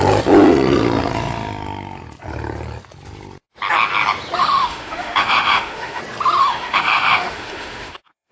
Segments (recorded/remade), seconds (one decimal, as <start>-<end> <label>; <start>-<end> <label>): 0.0-4.4 recorded; 4.4-6.0 remade; 6.0-6.4 recorded; 6.4-8.3 remade